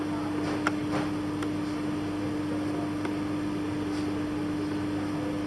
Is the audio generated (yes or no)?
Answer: no